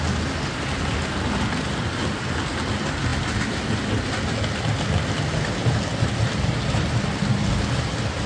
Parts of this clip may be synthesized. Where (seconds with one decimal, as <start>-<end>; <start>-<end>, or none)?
none